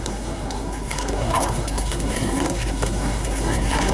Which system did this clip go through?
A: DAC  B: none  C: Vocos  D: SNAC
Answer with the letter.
D